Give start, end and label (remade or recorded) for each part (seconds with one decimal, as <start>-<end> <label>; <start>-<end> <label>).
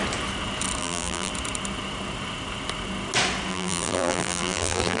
0.0-0.8 recorded; 0.8-1.3 remade; 1.3-3.5 recorded; 3.5-5.0 remade